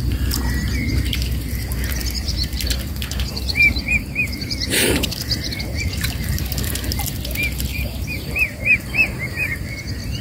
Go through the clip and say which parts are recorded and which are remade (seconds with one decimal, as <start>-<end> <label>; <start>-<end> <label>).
0.0-2.0 recorded; 2.0-6.5 remade; 6.5-7.7 recorded; 7.7-9.6 remade; 9.6-10.2 recorded